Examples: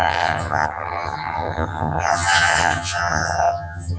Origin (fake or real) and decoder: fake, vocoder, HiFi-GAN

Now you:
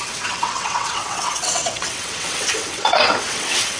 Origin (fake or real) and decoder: fake, vocoder, WaveNeXt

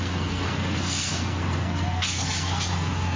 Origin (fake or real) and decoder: fake, codec, SNAC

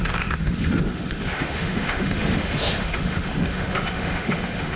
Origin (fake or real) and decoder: fake, autoencoder, DAC-VAE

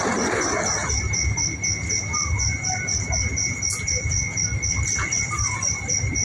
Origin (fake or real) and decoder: real